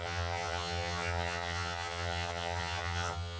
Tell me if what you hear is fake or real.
fake